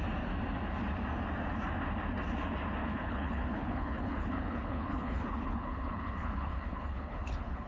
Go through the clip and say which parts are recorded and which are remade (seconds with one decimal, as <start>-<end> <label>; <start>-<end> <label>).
0.0-2.8 recorded; 2.8-7.7 remade